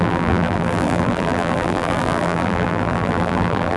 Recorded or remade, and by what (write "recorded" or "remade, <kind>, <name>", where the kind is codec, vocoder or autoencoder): remade, vocoder, BigVGAN v2